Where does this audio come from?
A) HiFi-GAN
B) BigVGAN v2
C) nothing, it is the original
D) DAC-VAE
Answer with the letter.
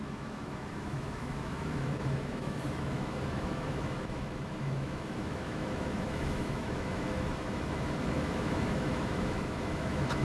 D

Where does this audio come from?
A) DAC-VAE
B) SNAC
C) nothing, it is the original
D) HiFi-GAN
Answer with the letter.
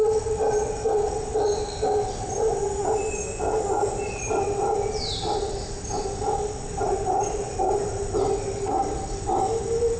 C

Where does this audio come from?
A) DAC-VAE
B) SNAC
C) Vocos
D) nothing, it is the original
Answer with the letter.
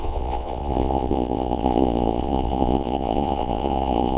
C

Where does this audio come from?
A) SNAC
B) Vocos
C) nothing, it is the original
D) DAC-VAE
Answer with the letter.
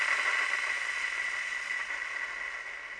C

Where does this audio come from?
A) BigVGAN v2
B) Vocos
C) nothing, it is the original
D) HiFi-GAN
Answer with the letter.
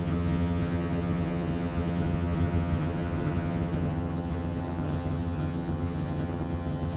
D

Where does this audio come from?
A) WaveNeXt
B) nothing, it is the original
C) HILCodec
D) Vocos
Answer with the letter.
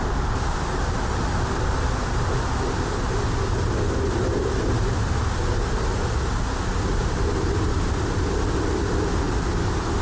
B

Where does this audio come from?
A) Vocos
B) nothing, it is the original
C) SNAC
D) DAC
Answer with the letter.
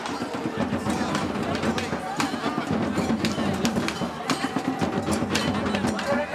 B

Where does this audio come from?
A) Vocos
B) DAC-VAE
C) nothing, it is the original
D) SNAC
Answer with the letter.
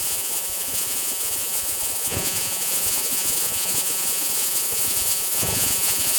A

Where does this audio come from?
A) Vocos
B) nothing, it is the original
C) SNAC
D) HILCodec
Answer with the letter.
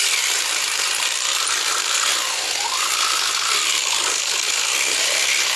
B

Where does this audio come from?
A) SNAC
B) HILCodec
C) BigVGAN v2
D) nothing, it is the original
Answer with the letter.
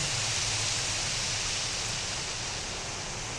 D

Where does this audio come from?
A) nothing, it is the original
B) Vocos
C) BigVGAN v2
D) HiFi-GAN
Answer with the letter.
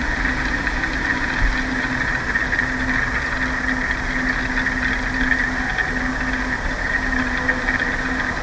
A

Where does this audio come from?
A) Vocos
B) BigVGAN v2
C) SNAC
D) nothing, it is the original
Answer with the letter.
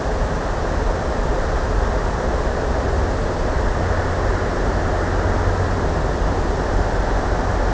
D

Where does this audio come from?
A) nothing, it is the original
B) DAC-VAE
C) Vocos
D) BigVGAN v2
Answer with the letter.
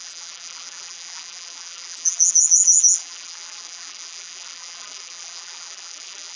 D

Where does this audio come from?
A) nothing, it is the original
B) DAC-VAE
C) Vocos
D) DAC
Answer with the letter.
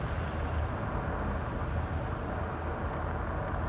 A